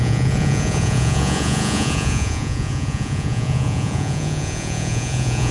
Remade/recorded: remade